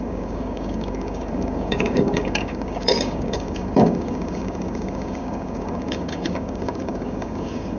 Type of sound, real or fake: fake